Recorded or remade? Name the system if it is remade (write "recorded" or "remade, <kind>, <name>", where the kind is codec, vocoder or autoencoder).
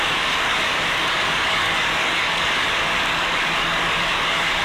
remade, codec, DAC